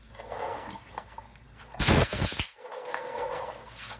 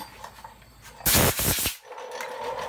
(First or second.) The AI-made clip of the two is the first